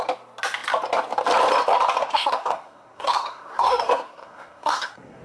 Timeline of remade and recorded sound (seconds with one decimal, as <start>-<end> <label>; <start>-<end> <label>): 0.0-2.0 recorded; 2.0-5.2 remade